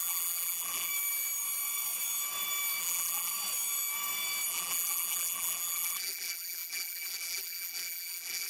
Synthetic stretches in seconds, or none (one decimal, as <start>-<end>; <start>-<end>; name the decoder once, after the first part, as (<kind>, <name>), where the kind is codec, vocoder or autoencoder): 0.0-0.9 (vocoder, BigVGAN v2); 2.8-3.3; 4.5-8.5